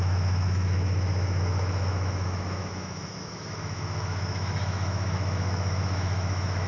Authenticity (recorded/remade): remade